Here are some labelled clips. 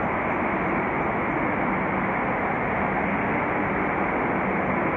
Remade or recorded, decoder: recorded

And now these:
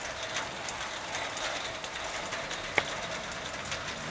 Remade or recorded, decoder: recorded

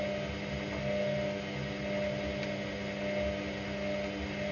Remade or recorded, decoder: recorded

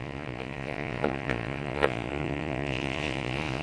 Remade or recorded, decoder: remade, vocoder, Vocos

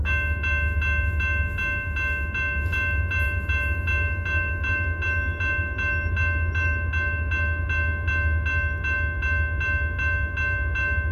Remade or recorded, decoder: recorded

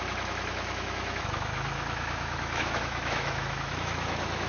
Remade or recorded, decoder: remade, autoencoder, DAC-VAE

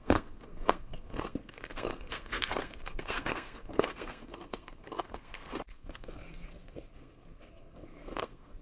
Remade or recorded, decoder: remade, codec, SNAC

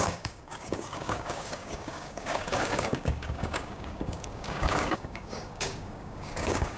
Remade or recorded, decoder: remade, codec, DAC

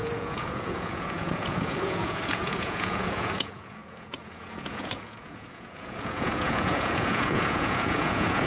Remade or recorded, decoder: remade, vocoder, Vocos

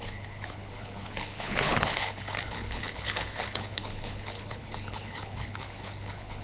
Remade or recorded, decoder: remade, codec, HILCodec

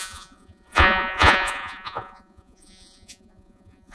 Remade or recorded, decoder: remade, vocoder, Vocos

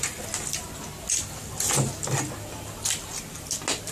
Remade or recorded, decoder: recorded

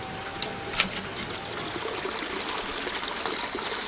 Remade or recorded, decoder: recorded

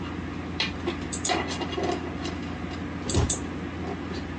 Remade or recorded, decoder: recorded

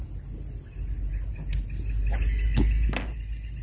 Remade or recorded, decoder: recorded